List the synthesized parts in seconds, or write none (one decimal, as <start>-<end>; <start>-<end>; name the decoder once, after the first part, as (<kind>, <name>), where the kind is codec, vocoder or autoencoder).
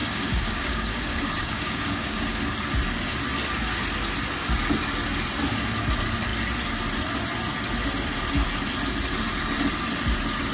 0.0-2.4 (codec, DAC)